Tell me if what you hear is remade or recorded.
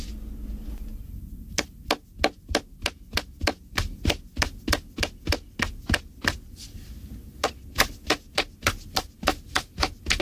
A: recorded